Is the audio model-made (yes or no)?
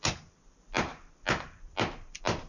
no